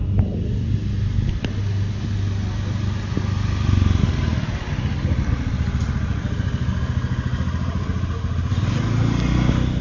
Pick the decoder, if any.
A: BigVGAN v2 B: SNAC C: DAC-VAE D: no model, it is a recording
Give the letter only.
D